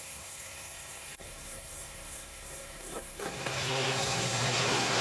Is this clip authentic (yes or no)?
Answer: no